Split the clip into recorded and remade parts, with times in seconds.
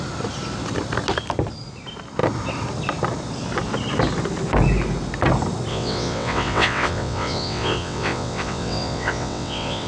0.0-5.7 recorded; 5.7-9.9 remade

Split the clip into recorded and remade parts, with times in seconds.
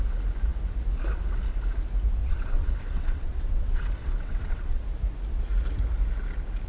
0.0-2.2 recorded; 2.2-4.8 remade; 4.8-6.7 recorded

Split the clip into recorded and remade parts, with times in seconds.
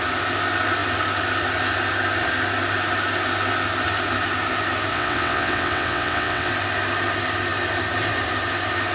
0.0-4.9 recorded; 4.9-6.5 remade; 6.5-8.9 recorded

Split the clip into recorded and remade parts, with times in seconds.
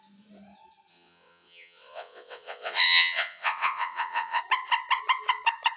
0.0-0.9 recorded; 0.9-4.4 remade; 4.4-5.8 recorded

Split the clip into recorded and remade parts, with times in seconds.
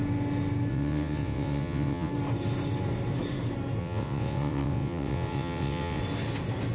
0.0-0.7 recorded; 0.7-2.1 remade; 2.1-3.8 recorded; 3.8-6.0 remade; 6.0-6.7 recorded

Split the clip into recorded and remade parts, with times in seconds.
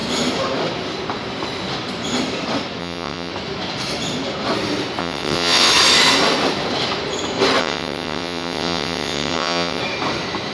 0.0-2.8 recorded; 2.8-3.3 remade; 3.3-5.0 recorded; 5.0-5.7 remade; 5.7-7.6 recorded; 7.6-9.8 remade; 9.8-10.5 recorded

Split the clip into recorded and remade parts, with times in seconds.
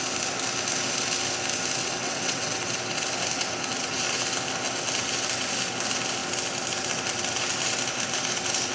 0.0-1.8 recorded; 1.8-2.7 remade; 2.7-8.7 recorded